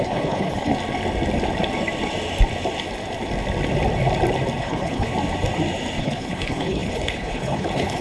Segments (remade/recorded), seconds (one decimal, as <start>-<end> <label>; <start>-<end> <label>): 0.0-0.7 remade; 0.7-4.6 recorded; 4.6-5.1 remade; 5.1-6.0 recorded; 6.0-8.0 remade